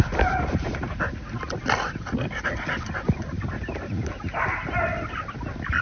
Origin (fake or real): real